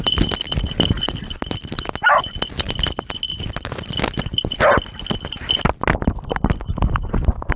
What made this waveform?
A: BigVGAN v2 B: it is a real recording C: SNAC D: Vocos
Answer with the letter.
B